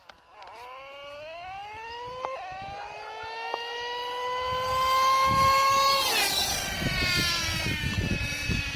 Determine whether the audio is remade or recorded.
recorded